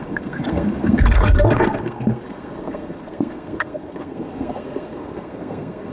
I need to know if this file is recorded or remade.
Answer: remade